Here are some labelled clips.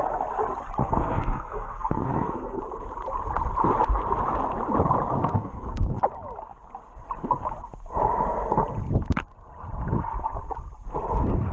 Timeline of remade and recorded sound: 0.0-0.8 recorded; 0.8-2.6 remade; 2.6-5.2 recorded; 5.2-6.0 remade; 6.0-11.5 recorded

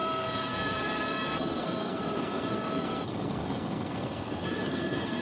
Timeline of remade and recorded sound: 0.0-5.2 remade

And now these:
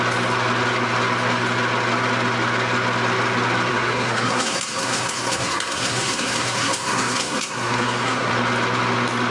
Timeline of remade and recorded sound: 0.0-3.7 recorded; 3.7-8.3 remade; 8.3-9.3 recorded

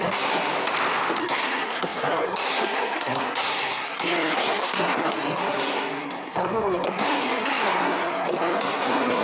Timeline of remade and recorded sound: 0.0-0.5 remade; 0.5-1.2 recorded; 1.2-9.2 remade

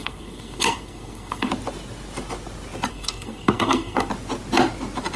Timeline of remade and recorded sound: 0.0-1.5 remade; 1.5-2.9 recorded; 2.9-4.1 remade; 4.1-5.2 recorded